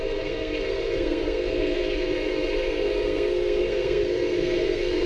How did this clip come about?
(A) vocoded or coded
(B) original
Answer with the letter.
A